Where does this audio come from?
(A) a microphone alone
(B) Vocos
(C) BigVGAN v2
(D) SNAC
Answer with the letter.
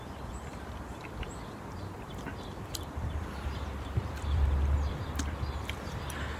C